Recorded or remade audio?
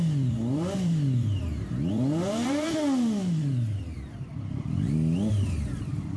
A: remade